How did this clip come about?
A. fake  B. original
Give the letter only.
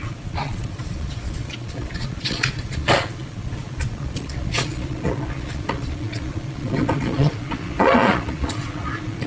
A